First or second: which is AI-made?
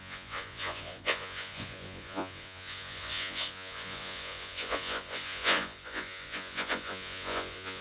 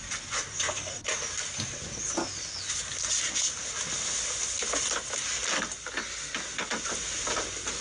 first